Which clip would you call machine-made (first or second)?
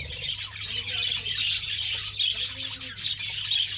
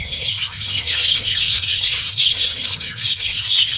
second